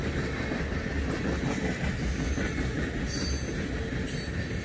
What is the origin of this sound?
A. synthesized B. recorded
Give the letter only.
B